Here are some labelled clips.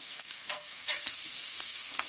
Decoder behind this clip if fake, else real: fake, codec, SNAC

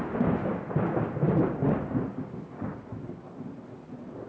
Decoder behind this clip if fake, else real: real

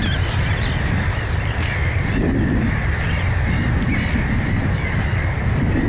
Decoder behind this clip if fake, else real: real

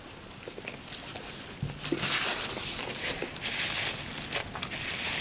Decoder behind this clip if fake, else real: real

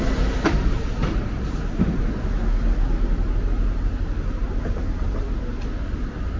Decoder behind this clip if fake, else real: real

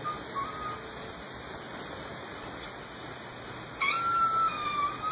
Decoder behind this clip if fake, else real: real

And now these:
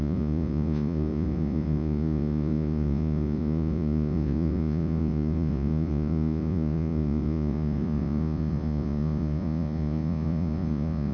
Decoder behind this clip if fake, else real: fake, vocoder, Vocos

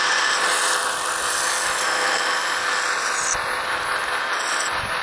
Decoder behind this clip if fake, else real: real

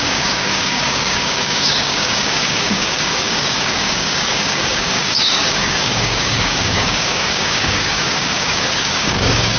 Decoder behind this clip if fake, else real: fake, codec, DAC